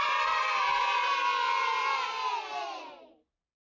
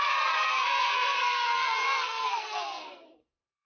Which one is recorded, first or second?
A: first